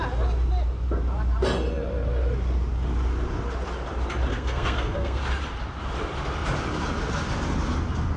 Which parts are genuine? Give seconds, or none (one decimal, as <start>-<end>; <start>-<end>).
0.0-4.3; 5.2-8.2